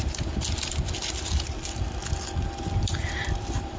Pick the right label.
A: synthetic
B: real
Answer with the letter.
A